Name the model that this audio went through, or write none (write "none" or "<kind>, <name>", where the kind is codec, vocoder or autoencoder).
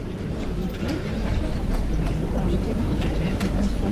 vocoder, BigVGAN v2